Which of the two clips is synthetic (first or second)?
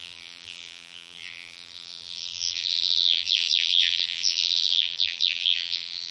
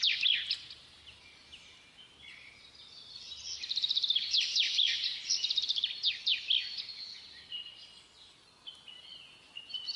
first